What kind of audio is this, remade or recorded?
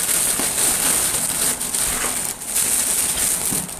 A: recorded